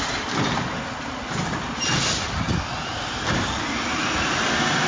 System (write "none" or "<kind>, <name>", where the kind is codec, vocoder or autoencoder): none